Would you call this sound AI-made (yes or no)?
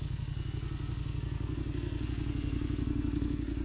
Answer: yes